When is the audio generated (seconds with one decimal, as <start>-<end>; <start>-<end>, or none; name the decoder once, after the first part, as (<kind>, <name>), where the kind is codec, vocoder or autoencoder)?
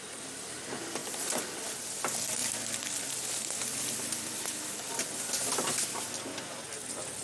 1.0-2.0 (vocoder, BigVGAN v2); 2.4-5.7